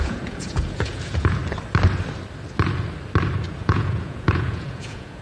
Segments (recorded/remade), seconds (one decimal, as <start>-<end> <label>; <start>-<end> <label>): 0.0-1.4 remade; 1.4-3.6 recorded; 3.6-5.2 remade